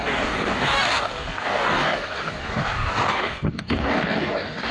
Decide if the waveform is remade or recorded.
remade